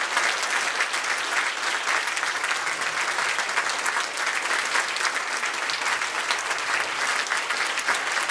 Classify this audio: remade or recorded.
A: recorded